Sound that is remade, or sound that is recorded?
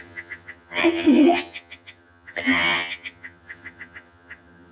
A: remade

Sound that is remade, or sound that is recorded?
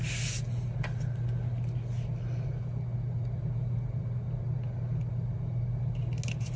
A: recorded